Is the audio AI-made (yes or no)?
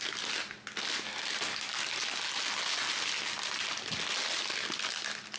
no